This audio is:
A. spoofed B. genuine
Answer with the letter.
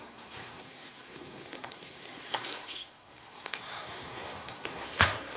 A